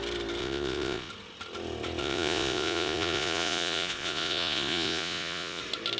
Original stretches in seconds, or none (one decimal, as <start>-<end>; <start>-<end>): 0.0-0.4; 1.1-2.0; 5.6-6.0